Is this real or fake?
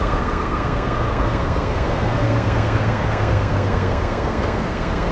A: fake